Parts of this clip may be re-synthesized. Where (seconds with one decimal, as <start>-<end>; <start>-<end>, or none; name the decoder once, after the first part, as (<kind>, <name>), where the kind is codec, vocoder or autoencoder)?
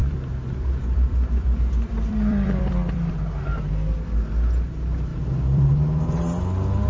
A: 0.0-3.1 (vocoder, BigVGAN v2); 5.1-5.7